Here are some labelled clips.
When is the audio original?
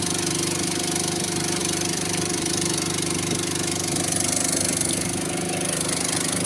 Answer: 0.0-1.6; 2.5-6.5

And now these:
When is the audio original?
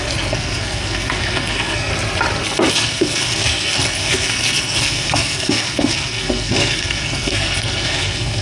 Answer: 1.9-2.7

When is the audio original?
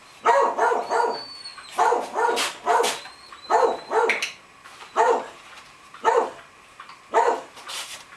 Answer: 0.0-0.8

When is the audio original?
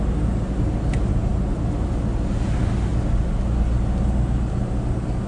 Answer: 0.0-5.3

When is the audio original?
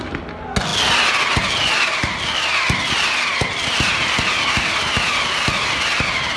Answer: 0.0-6.4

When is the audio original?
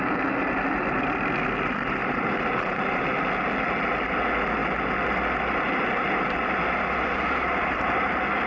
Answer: 0.0-2.0; 3.0-8.5